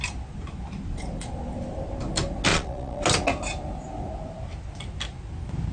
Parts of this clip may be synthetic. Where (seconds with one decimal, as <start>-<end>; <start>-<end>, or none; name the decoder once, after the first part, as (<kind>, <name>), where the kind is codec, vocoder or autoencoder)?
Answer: 2.5-3.0 (vocoder, Vocos)

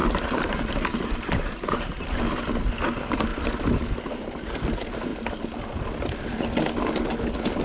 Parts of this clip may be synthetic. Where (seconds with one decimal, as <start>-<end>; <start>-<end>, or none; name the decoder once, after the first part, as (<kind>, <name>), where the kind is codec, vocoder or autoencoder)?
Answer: 0.0-1.9 (vocoder, BigVGAN v2); 3.3-4.4